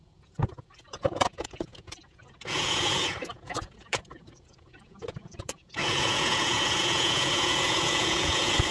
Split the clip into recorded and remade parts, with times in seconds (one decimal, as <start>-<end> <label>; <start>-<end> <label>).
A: 0.0-8.7 remade